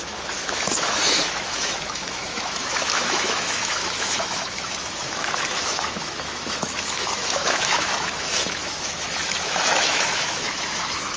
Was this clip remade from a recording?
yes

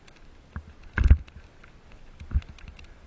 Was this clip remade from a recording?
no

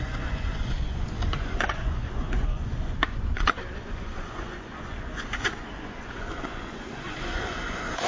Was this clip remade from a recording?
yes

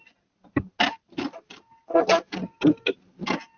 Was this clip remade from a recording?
no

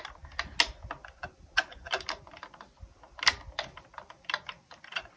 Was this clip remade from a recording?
no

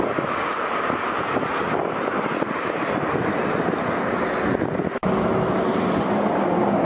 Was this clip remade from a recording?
no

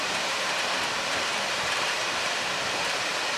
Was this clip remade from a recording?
yes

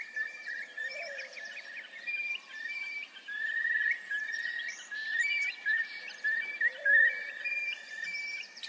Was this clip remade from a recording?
yes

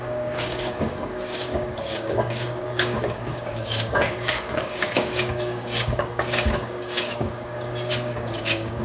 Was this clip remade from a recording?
yes